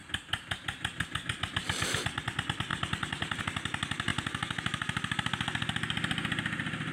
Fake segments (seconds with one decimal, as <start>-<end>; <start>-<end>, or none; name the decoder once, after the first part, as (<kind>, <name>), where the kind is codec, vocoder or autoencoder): 2.7-3.4 (vocoder, BigVGAN v2)